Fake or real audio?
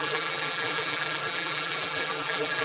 fake